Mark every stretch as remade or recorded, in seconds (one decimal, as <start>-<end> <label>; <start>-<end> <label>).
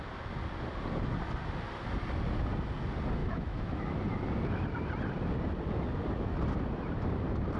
0.0-3.2 recorded; 3.2-3.8 remade; 3.8-7.6 recorded